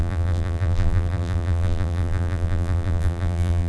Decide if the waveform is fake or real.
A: fake